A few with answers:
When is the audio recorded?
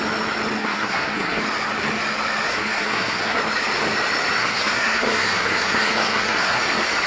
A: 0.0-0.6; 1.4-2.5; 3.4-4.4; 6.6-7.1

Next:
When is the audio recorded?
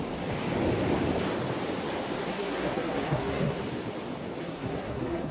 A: 0.0-2.2; 3.6-4.4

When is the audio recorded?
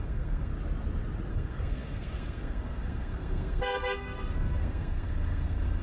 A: 0.5-1.3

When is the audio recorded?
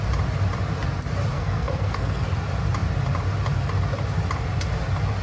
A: 0.0-1.3; 2.3-5.2